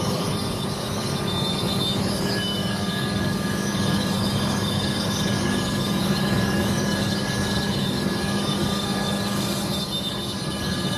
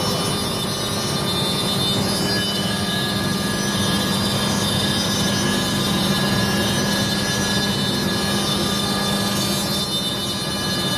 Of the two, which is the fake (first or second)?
first